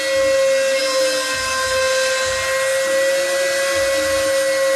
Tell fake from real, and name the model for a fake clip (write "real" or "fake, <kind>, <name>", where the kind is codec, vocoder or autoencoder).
real